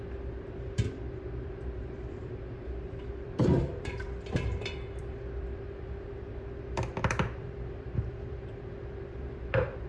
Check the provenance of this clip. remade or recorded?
remade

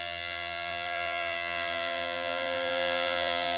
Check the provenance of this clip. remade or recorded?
remade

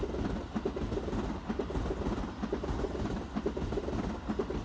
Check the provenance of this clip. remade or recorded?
recorded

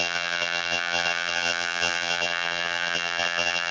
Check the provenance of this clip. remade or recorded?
remade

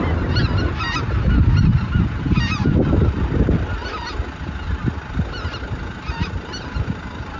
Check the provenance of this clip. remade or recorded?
recorded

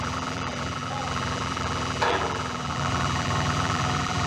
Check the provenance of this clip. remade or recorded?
remade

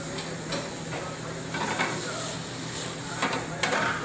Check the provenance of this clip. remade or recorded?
recorded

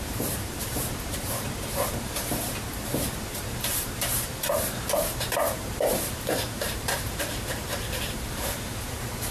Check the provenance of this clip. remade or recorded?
remade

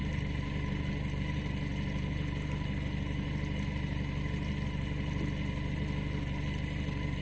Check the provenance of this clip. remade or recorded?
recorded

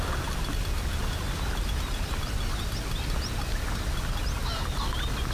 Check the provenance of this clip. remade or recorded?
recorded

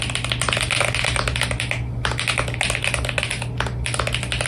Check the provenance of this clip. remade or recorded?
recorded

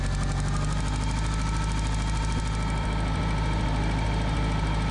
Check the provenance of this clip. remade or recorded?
recorded